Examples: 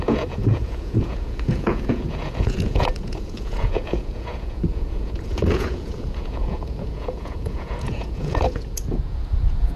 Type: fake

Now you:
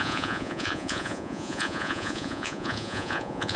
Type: fake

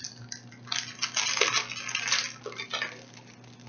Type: real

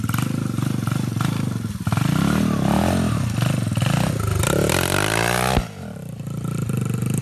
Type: real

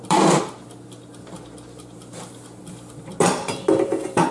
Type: real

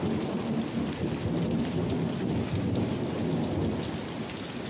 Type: real